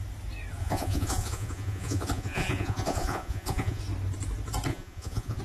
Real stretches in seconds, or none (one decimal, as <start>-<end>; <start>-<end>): 0.0-0.6; 3.8-4.7